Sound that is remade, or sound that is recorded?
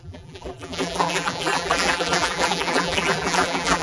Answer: remade